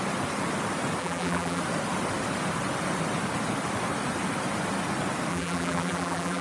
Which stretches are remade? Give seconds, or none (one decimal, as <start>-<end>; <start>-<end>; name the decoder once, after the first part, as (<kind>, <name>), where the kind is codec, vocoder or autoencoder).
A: 1.0-1.6 (vocoder, BigVGAN v2); 5.3-6.4